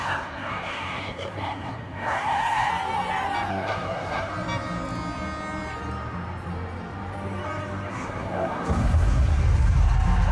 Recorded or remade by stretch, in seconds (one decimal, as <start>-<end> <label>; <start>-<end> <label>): 0.0-2.7 remade; 2.7-3.5 recorded; 3.5-4.3 remade; 4.3-7.9 recorded; 7.9-9.4 remade; 9.4-10.3 recorded